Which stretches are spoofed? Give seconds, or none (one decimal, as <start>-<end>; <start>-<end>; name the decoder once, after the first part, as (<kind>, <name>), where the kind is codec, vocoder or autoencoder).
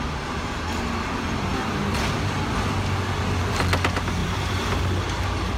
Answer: 4.2-4.8 (vocoder, BigVGAN v2)